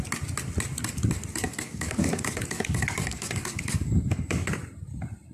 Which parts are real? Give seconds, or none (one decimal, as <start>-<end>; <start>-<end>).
0.0-1.3; 4.5-5.3